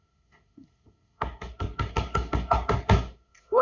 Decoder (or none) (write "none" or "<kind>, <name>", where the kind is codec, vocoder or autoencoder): codec, SNAC